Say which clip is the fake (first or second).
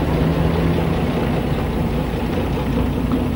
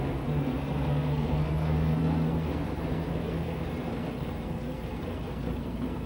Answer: second